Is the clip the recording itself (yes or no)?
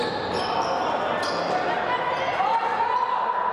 yes